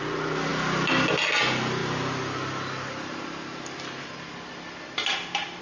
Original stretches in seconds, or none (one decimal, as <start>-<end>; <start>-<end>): 0.0-5.6